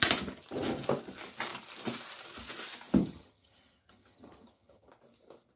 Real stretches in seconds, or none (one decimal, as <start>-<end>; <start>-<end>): 0.0-3.0; 4.9-5.6